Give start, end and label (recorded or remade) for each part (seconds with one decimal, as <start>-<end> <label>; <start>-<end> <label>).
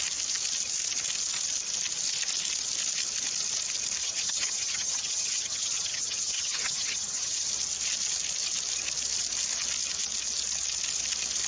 0.0-4.0 recorded; 4.0-7.5 remade; 7.5-11.5 recorded